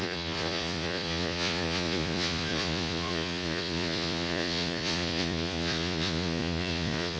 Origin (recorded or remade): remade